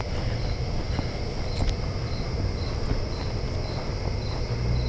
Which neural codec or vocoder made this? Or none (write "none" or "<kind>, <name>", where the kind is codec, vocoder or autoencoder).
none